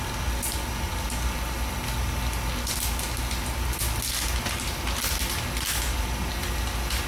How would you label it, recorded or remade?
recorded